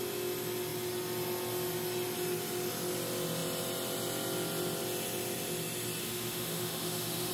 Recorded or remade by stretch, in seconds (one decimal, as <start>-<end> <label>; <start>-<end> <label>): 0.0-6.0 recorded; 6.0-7.3 remade